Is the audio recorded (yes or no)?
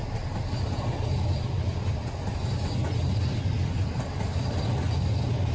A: yes